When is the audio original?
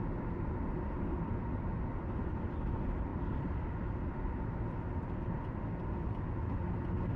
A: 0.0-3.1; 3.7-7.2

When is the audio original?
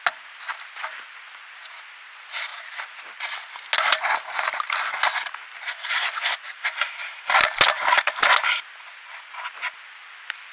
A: 0.0-10.5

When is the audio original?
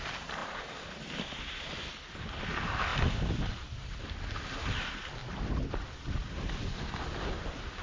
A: 0.0-7.8